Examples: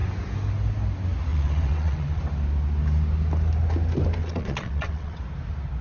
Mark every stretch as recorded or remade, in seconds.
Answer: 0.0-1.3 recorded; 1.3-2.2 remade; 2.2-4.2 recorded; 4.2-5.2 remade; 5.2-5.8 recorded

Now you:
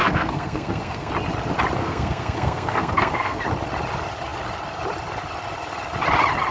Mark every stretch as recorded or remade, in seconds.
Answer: 0.0-1.1 remade; 1.1-1.8 recorded; 1.8-3.4 remade; 3.4-6.5 recorded

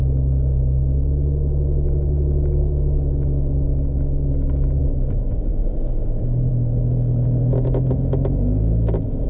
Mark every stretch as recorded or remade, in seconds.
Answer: 0.0-4.8 remade; 4.8-6.5 recorded; 6.5-9.3 remade